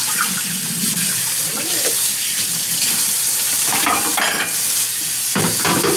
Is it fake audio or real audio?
fake